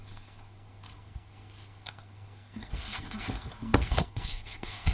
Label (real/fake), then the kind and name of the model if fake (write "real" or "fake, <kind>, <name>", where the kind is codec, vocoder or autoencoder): fake, codec, SNAC